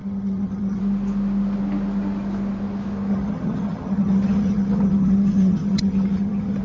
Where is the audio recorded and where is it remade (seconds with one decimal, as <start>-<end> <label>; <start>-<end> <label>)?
0.0-0.8 remade; 0.8-3.1 recorded; 3.1-6.6 remade